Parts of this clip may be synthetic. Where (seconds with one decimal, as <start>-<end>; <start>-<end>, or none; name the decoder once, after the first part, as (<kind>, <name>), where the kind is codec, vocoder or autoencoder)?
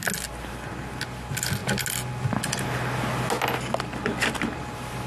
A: none